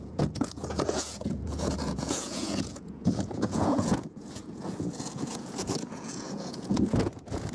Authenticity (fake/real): fake